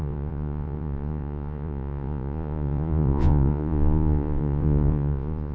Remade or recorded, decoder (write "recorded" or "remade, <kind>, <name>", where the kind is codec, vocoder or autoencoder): remade, vocoder, Vocos